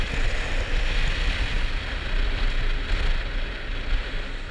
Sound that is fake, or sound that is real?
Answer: real